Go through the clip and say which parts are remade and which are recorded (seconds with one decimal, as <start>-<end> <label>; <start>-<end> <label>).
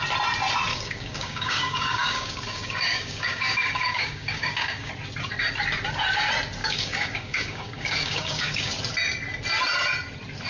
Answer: 0.0-0.7 recorded; 0.7-4.9 remade; 4.9-6.6 recorded; 6.6-8.7 remade; 8.7-10.5 recorded